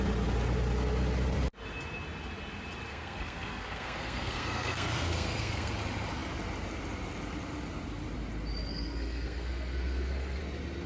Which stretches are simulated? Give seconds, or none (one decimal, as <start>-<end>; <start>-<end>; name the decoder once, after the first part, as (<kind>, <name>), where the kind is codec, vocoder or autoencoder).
2.9-5.7 (codec, SNAC); 8.7-10.4